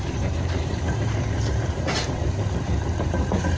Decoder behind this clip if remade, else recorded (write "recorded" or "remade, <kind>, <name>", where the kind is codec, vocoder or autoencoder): remade, vocoder, BigVGAN v2